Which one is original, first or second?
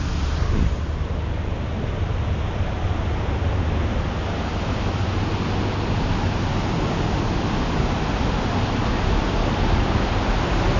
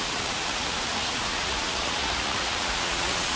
first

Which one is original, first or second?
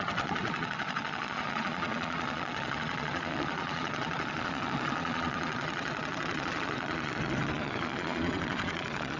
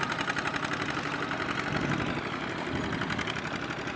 second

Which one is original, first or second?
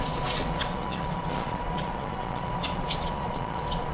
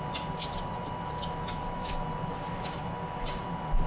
second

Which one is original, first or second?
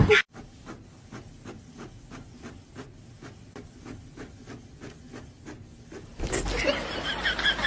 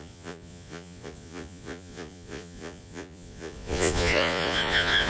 first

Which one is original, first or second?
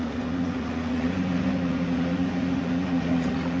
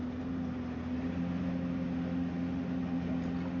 second